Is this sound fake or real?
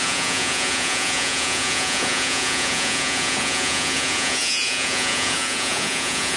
fake